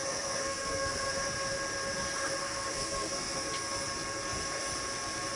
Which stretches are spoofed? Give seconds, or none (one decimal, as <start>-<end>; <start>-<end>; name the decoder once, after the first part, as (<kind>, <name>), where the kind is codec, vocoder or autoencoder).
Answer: 0.0-1.1 (codec, SNAC); 2.4-3.4